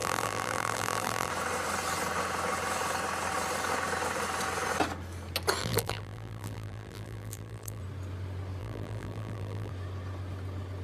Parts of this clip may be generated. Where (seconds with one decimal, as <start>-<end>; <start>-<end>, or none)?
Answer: 0.0-1.3; 5.6-7.8; 8.6-9.7